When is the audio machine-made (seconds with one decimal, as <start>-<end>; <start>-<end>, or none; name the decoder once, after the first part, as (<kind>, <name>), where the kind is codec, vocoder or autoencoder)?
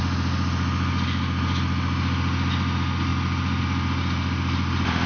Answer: none